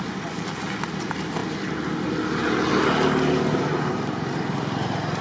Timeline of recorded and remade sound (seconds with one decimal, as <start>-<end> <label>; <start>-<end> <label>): 0.0-5.2 recorded